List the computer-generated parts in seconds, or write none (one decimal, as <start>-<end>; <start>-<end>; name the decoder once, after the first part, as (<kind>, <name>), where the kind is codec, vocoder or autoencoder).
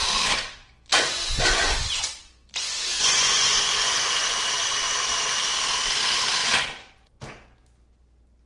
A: 0.0-4.4 (vocoder, Vocos); 6.4-7.2